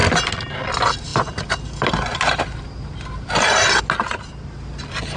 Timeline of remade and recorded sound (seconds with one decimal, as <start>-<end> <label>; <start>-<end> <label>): 0.0-5.2 recorded